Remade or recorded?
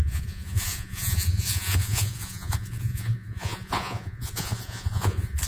remade